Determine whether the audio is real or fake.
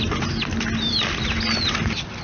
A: real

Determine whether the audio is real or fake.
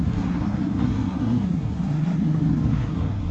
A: fake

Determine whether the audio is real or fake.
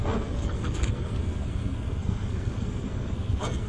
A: fake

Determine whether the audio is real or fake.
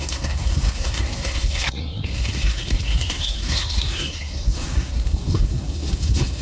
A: fake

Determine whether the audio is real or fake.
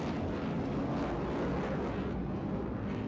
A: real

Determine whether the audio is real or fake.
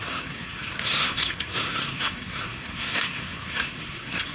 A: fake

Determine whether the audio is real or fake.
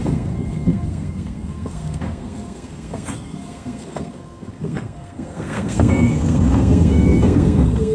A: fake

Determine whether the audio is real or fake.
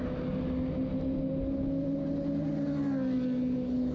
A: real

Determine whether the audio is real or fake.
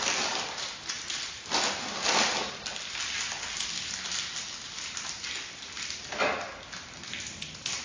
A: real